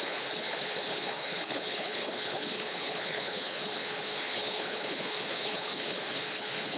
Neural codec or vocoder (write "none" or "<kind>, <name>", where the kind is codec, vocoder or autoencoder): codec, HILCodec